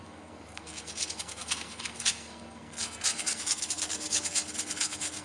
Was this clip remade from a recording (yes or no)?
yes